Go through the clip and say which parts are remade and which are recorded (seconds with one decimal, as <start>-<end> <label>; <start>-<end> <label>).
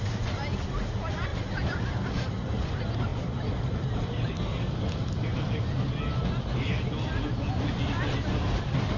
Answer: 0.0-1.3 recorded; 1.3-2.4 remade; 2.4-3.1 recorded; 3.1-4.3 remade; 4.3-9.0 recorded